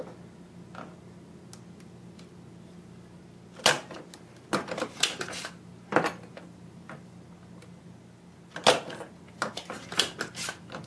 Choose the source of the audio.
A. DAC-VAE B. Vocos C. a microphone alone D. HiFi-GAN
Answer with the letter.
C